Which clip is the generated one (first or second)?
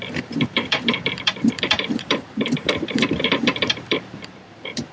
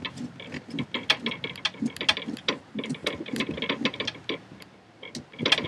first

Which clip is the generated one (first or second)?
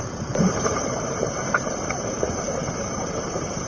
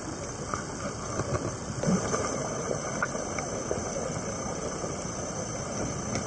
first